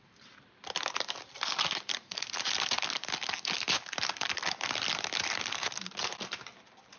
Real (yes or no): yes